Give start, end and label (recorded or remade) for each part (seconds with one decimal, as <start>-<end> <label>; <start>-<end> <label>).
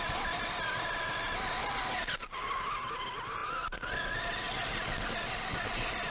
0.0-6.1 recorded